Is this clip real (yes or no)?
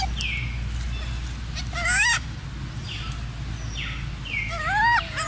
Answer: yes